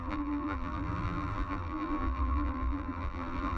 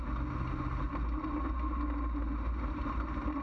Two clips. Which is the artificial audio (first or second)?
first